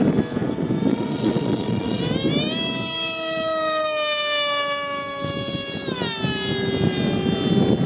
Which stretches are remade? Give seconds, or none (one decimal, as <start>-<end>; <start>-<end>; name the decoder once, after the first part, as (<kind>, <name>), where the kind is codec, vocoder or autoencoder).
0.9-2.0 (vocoder, Vocos)